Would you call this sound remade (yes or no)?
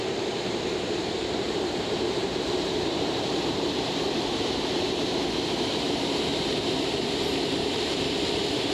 yes